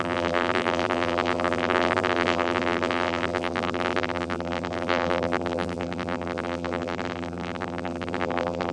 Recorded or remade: remade